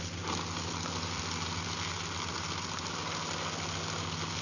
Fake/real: real